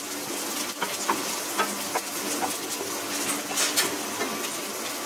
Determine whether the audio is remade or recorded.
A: recorded